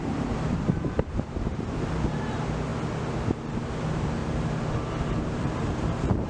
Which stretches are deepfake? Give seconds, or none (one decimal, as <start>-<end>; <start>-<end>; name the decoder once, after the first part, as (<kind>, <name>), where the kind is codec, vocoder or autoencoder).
0.0-2.7 (vocoder, BigVGAN v2); 3.5-4.2; 5.0-6.3